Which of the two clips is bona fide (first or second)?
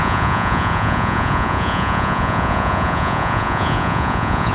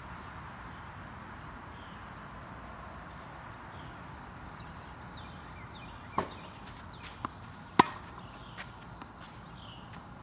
second